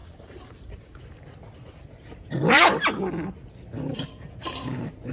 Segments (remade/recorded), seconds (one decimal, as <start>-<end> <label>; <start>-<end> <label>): 0.0-3.1 remade; 3.1-4.4 recorded; 4.4-5.1 remade